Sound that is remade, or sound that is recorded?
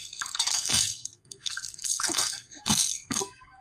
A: remade